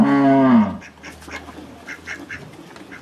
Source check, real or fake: real